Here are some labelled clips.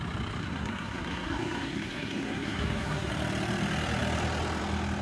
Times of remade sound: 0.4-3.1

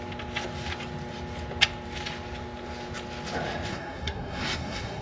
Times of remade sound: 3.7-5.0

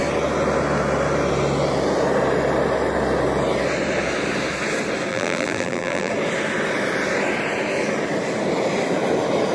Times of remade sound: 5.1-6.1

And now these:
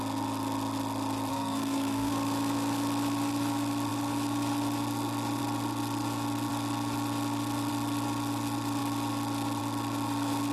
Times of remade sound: 1.3-2.1